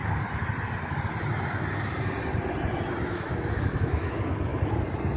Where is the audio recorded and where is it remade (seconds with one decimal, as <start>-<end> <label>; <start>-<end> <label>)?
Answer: 0.0-3.1 recorded; 3.1-4.5 remade; 4.5-5.2 recorded